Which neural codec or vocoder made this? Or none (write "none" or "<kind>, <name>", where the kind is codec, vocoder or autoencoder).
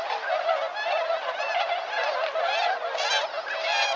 none